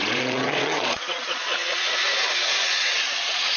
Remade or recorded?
remade